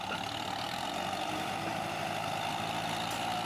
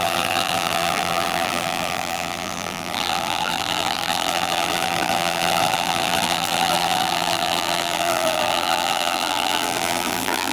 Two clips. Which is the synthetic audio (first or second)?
second